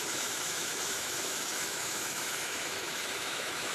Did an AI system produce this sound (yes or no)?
yes